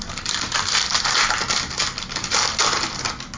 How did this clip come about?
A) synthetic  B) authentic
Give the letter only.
B